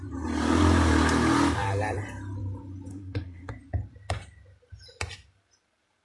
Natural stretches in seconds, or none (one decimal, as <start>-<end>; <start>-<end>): 0.0-2.9; 3.5-6.0